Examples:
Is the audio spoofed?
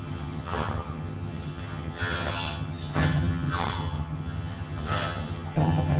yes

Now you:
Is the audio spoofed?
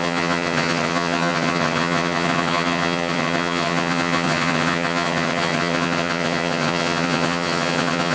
yes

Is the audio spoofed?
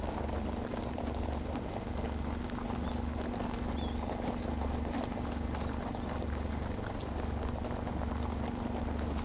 no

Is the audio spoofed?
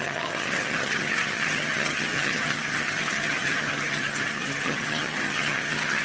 yes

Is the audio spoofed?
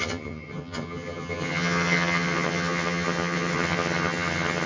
yes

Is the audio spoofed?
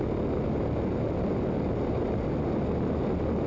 no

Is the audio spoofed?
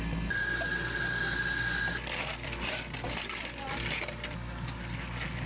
no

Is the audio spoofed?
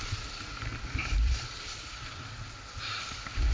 no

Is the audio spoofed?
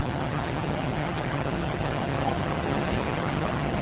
yes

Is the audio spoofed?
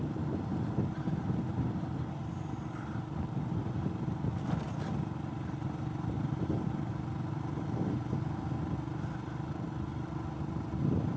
no